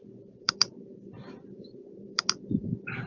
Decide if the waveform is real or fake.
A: fake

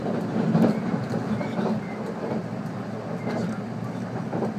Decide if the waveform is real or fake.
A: real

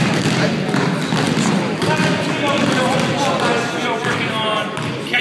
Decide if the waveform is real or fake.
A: real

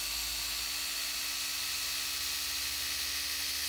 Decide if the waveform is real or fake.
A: real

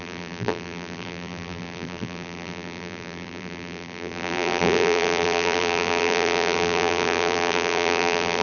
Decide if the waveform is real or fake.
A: fake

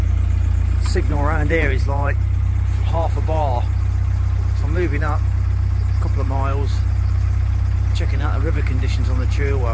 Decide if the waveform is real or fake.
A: fake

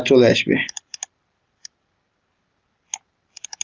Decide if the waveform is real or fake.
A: real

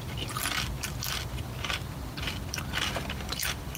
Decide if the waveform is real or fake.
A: fake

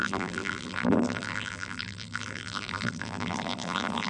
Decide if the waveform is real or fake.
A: fake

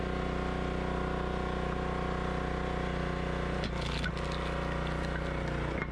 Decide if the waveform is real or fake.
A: real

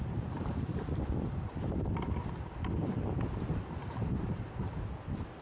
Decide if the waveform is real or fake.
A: real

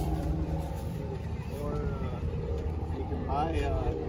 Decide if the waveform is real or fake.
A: fake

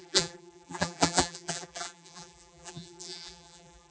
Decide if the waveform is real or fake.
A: fake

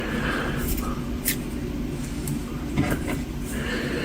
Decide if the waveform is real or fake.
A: real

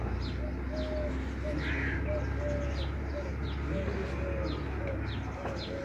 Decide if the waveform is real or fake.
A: real